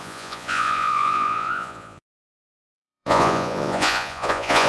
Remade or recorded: remade